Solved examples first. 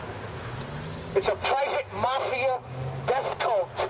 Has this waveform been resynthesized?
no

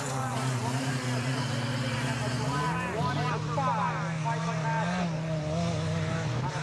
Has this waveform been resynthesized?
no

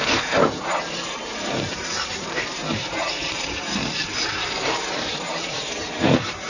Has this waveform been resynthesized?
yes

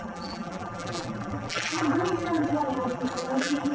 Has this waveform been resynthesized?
yes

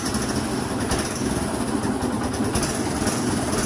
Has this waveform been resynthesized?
no